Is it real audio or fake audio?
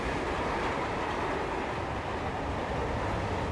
real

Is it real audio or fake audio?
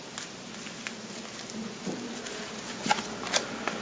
real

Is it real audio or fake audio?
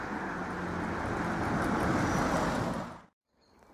real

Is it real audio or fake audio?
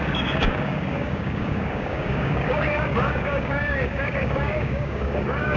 fake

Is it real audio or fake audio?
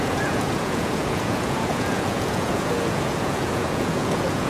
fake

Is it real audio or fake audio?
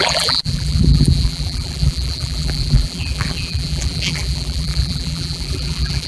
fake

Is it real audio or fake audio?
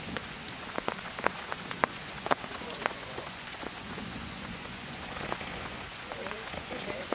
fake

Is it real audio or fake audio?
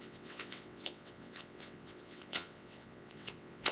fake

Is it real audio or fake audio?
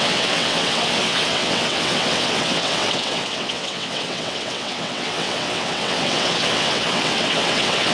fake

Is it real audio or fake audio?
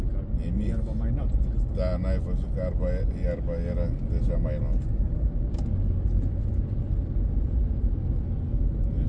real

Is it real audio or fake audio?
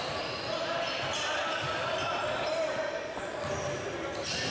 real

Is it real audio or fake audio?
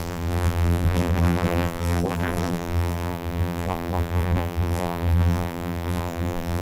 fake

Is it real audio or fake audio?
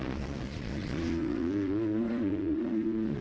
fake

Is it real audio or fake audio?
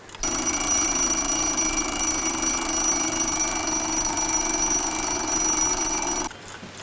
real